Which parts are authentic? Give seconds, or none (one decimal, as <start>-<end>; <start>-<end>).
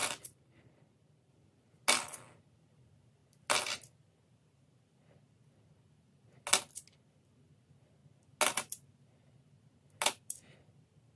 1.3-11.2